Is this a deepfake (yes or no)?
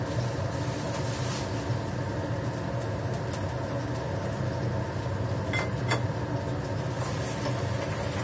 no